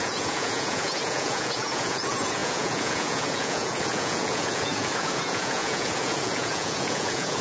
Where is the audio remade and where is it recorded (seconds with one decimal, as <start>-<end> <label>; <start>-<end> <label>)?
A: 0.0-7.4 remade